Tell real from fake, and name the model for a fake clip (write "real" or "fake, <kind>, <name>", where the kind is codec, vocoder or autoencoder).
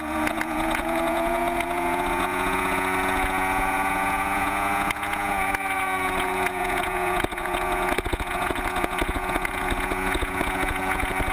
fake, vocoder, Vocos